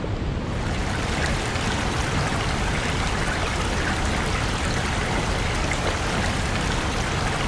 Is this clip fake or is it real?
real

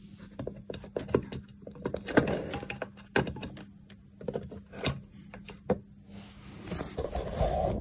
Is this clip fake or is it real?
real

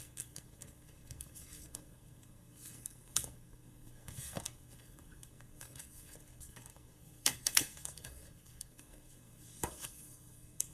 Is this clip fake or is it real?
fake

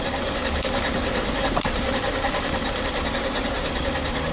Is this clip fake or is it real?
fake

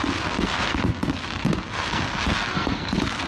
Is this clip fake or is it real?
fake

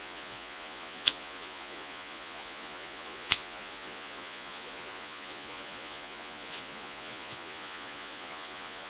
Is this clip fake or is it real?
fake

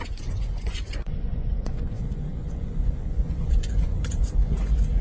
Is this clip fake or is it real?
fake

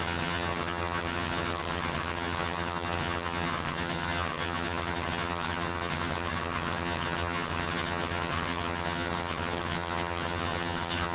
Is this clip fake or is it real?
fake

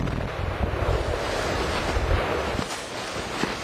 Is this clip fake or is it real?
real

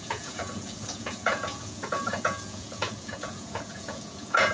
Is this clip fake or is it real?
fake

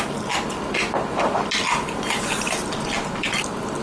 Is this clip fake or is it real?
real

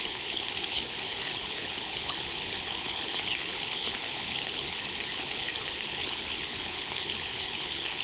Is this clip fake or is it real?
fake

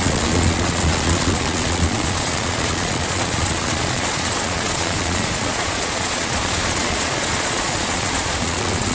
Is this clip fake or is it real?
fake